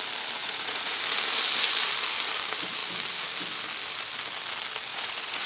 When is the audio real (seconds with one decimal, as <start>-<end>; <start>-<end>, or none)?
0.0-0.4; 1.0-4.9